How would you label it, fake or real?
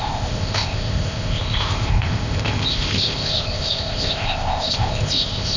fake